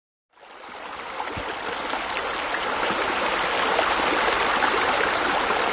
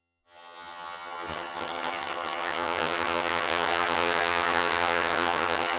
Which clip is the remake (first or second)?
second